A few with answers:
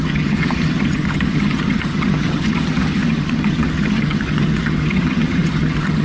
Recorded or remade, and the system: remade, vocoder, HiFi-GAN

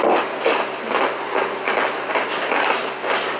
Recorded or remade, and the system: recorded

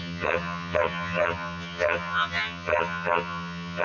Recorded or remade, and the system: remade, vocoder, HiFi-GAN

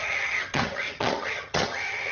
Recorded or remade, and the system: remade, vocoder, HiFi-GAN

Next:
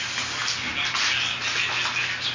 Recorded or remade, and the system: recorded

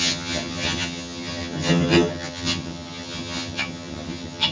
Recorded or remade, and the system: remade, vocoder, HiFi-GAN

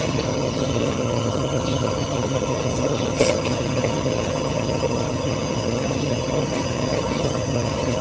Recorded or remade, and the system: remade, vocoder, HiFi-GAN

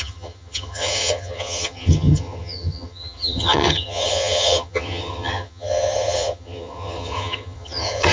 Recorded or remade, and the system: remade, vocoder, HiFi-GAN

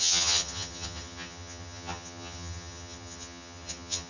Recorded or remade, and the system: remade, vocoder, HiFi-GAN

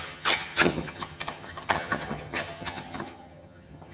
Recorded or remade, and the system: remade, vocoder, HiFi-GAN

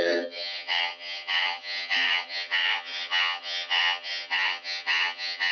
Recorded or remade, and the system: remade, vocoder, HiFi-GAN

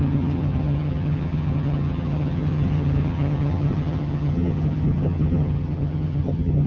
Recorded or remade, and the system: remade, vocoder, HiFi-GAN